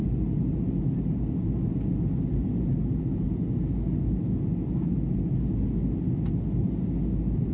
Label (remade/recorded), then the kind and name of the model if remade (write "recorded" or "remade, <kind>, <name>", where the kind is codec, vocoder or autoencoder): recorded